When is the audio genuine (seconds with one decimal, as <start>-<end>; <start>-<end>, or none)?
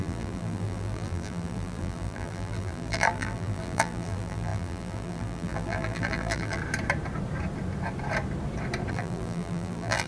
6.6-8.9